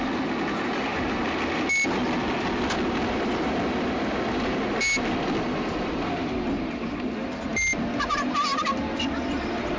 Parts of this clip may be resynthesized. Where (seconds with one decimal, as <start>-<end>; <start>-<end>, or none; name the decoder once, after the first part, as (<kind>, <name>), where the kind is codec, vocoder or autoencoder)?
none